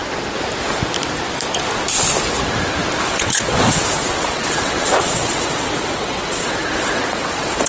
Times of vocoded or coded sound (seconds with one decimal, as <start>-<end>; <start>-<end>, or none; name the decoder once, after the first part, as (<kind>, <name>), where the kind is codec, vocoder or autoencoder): 3.1-7.7 (vocoder, WaveNeXt)